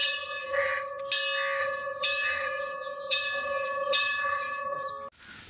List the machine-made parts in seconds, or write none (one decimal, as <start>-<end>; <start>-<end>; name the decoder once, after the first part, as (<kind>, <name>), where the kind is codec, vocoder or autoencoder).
0.0-1.0 (vocoder, HiFi-GAN); 1.6-4.9